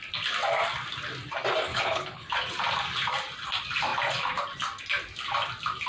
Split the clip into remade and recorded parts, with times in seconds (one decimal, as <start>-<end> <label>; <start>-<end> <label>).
0.0-1.7 recorded; 1.7-2.3 remade; 2.3-5.9 recorded